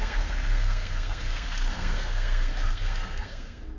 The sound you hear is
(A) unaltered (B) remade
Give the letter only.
B